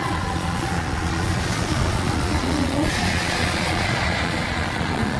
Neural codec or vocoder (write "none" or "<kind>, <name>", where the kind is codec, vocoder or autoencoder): vocoder, Vocos